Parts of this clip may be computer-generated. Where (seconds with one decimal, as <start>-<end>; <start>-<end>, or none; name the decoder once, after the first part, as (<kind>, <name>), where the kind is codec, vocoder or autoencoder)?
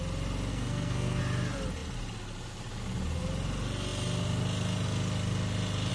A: 0.5-1.2 (codec, SNAC)